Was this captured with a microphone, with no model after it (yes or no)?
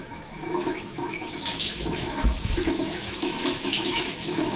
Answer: no